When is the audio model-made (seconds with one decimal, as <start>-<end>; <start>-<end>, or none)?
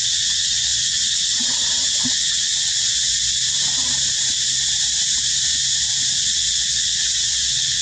0.0-3.1; 6.2-7.8